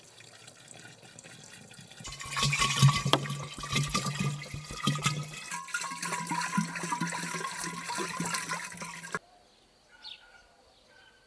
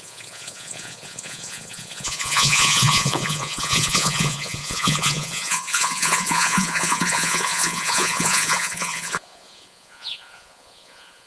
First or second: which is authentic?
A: first